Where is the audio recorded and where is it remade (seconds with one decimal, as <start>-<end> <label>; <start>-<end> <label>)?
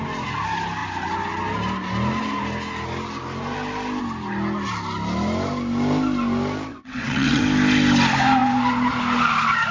0.0-6.7 recorded; 6.7-7.4 remade; 7.4-9.7 recorded